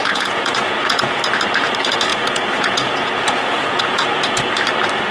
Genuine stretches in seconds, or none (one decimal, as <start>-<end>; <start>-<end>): 1.2-2.1; 4.5-5.1